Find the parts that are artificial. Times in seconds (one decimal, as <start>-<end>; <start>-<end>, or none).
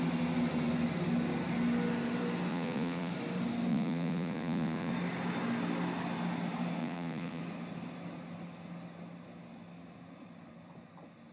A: 2.5-3.1; 3.7-4.9; 6.8-7.4